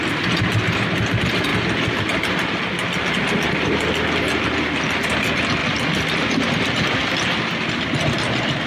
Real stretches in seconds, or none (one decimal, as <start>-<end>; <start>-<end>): 0.0-8.7